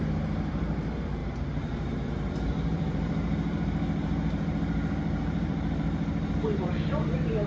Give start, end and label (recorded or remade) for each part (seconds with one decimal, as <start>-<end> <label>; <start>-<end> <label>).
0.0-7.5 remade